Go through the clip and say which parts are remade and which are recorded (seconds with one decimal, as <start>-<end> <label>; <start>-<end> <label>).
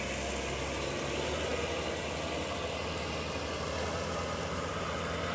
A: 0.0-5.3 recorded